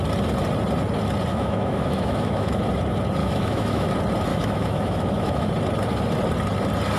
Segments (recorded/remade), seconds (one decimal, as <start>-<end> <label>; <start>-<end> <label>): 0.0-1.3 recorded; 1.3-2.6 remade; 2.6-3.2 recorded; 3.2-3.9 remade; 3.9-4.3 recorded; 4.3-5.5 remade; 5.5-7.0 recorded